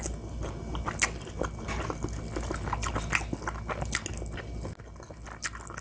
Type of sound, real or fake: real